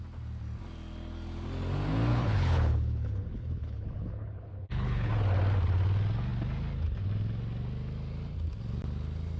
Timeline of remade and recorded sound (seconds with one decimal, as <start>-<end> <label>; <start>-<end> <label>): 0.0-2.1 recorded; 2.1-5.1 remade; 5.1-9.4 recorded